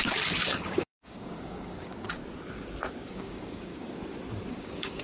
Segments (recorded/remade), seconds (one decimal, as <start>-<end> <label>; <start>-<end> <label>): 0.0-2.2 remade; 2.2-3.1 recorded; 3.1-4.0 remade; 4.0-4.5 recorded; 4.5-5.0 remade